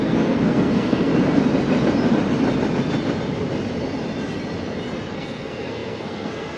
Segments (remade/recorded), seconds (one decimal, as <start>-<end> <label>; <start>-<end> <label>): 0.0-1.1 remade; 1.1-5.1 recorded; 5.1-6.6 remade